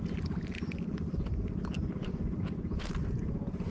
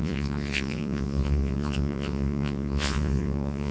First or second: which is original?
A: first